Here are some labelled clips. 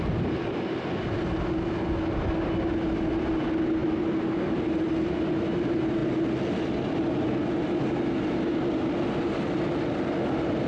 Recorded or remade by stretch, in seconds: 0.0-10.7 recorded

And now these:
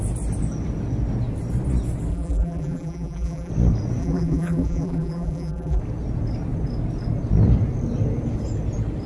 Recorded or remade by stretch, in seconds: 0.0-2.1 recorded; 2.1-3.5 remade; 3.5-4.0 recorded; 4.0-5.8 remade; 5.8-9.1 recorded

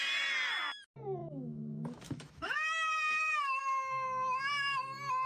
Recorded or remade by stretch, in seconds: 0.0-1.2 recorded; 1.2-4.4 remade; 4.4-5.3 recorded

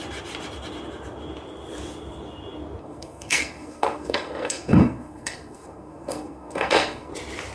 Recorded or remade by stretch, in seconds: 0.0-2.8 recorded; 2.8-7.1 remade; 7.1-7.5 recorded

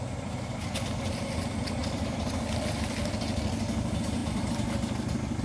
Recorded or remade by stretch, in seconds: 0.0-5.4 recorded

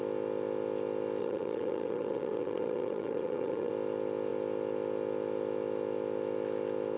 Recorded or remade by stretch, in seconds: 0.0-1.2 recorded; 1.2-3.7 remade; 3.7-7.0 recorded

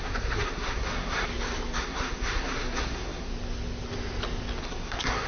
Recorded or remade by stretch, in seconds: 0.0-1.3 remade; 1.3-1.8 recorded; 1.8-3.3 remade; 3.3-4.6 recorded; 4.6-5.3 remade